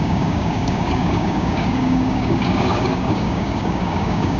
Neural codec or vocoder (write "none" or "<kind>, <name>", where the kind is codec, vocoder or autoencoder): codec, DAC